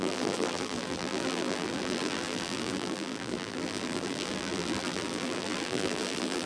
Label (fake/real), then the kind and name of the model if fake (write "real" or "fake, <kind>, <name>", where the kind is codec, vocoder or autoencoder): fake, vocoder, BigVGAN v2